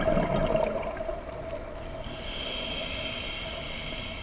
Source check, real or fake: real